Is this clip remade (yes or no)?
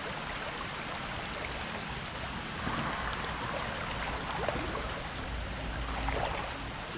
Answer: no